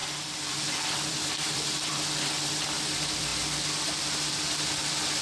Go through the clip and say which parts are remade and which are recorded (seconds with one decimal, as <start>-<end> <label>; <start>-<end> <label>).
0.0-2.6 remade; 2.6-5.2 recorded